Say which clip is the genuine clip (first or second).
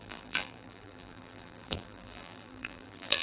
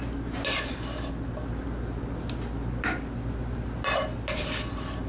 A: second